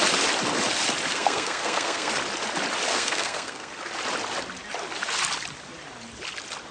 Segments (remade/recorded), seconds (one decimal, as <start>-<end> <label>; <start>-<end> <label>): 0.0-1.1 recorded; 1.1-2.1 remade; 2.1-2.9 recorded; 2.9-3.7 remade; 3.7-6.7 recorded